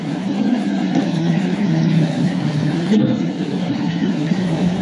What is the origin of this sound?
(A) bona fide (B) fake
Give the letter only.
B